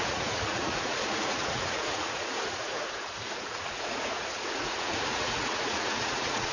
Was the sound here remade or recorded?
remade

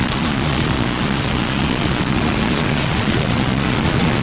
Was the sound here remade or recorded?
remade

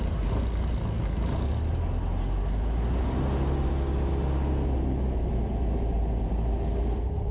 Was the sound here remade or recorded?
recorded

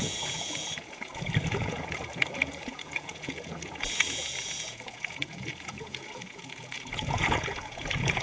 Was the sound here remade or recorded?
remade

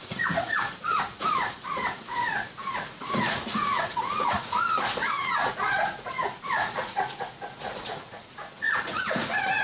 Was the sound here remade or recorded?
remade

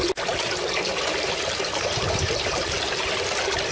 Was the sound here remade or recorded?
recorded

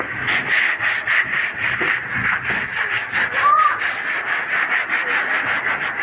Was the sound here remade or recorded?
recorded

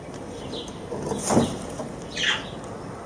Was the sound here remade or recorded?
recorded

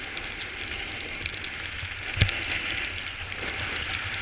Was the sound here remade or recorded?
recorded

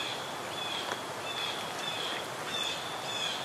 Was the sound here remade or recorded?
recorded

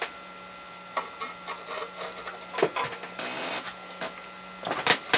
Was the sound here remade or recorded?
recorded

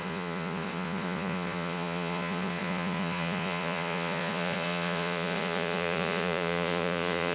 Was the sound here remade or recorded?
remade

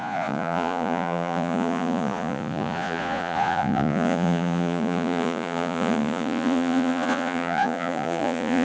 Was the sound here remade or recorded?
remade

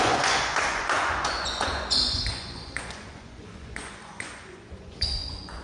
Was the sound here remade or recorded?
remade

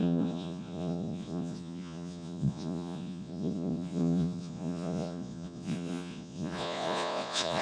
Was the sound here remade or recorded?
remade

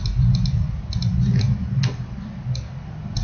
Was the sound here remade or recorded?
recorded